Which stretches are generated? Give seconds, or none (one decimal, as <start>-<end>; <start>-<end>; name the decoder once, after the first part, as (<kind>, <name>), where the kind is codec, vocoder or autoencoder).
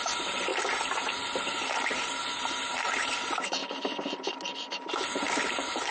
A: 0.0-3.6 (vocoder, BigVGAN v2); 4.7-5.9